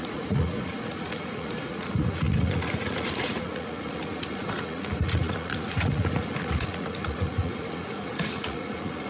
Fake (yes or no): yes